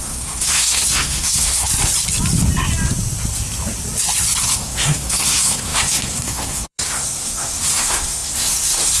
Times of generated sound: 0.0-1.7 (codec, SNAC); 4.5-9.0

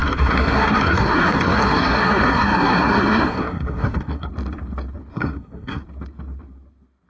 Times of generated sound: 0.0-4.3 (codec, SNAC); 5.1-5.8

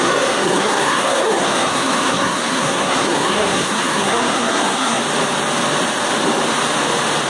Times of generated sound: 0.0-5.0 (codec, SNAC)